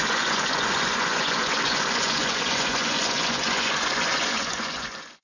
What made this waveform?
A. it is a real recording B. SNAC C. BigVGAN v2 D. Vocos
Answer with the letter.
D